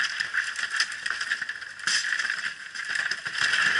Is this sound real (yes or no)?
yes